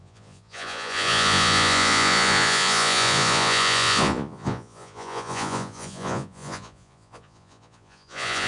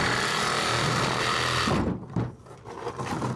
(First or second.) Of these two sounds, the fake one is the first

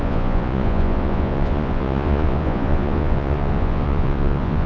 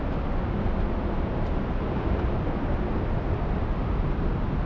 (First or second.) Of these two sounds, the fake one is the first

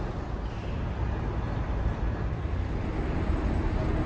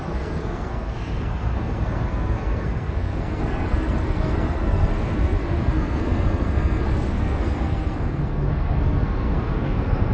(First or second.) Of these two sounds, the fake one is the second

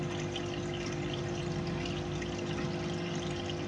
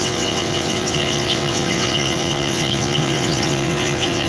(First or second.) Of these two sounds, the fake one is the second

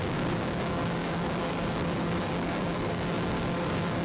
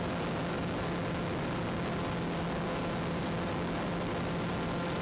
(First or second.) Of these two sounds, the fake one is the first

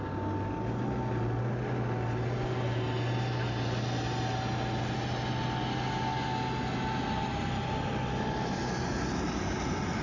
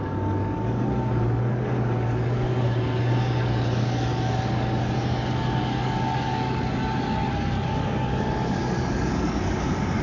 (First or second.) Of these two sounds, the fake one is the second